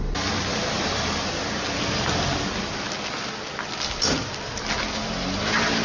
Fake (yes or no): no